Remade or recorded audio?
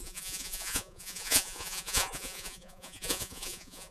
remade